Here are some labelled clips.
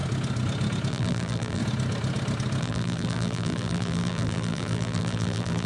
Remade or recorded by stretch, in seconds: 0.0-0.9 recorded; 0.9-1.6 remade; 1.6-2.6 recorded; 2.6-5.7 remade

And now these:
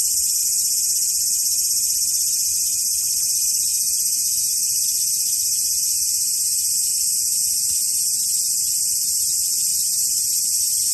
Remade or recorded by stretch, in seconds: 0.0-0.4 remade; 0.4-2.5 recorded; 2.5-3.7 remade; 3.7-6.9 recorded; 6.9-10.9 remade